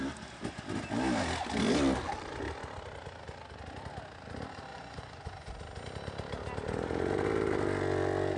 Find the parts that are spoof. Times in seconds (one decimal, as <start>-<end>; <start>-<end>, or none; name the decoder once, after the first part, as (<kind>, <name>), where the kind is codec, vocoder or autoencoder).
4.7-5.5 (vocoder, Vocos)

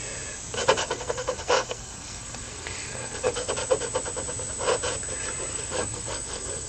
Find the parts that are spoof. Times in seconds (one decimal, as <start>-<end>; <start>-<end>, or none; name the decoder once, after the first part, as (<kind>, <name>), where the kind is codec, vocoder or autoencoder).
0.8-3.5 (codec, SNAC); 5.5-6.7

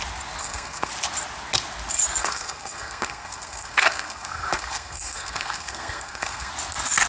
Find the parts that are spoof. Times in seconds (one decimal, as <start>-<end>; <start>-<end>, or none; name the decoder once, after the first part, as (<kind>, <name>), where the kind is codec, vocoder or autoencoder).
0.4-0.9 (codec, SNAC); 2.2-6.5

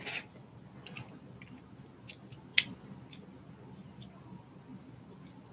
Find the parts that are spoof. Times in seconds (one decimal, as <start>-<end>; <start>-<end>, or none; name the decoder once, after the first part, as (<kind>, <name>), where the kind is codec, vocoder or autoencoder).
none

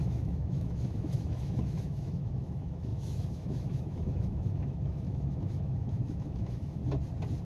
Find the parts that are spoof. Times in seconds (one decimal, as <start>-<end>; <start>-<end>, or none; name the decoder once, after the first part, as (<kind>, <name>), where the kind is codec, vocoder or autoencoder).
0.0-6.8 (autoencoder, DAC-VAE)

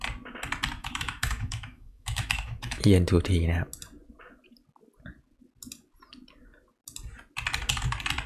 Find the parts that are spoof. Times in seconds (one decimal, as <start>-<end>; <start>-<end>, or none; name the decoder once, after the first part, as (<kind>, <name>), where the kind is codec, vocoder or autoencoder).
0.8-2.8 (autoencoder, DAC-VAE)

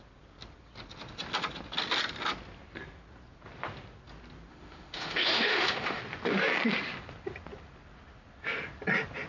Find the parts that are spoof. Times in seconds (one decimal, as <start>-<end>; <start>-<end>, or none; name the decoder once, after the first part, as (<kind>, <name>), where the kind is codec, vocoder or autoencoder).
4.5-6.0 (autoencoder, DAC-VAE)

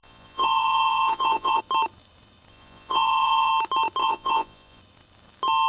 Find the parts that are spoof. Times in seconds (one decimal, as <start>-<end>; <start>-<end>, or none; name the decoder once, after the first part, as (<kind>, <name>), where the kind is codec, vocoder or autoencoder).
0.0-1.6 (vocoder, Vocos); 2.5-3.5; 4.0-4.8